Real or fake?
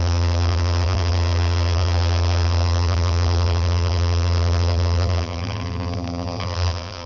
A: fake